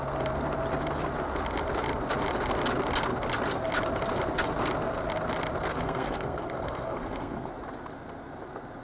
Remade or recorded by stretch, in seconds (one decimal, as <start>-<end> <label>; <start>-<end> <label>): 0.0-5.7 recorded; 5.7-7.5 remade; 7.5-8.8 recorded